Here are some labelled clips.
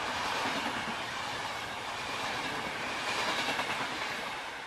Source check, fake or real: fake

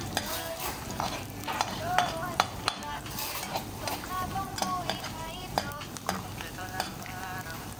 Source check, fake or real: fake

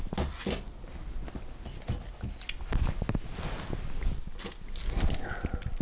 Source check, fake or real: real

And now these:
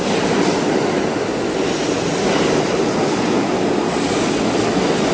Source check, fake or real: real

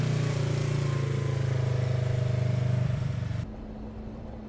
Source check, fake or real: real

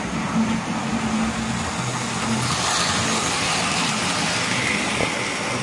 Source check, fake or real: real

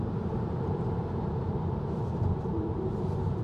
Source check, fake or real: fake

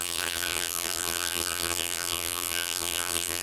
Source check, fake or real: fake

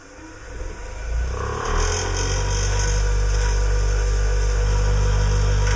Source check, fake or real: real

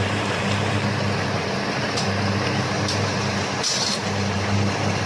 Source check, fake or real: fake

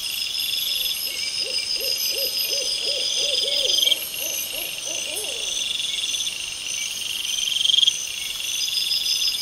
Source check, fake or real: real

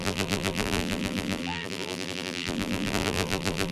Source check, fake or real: fake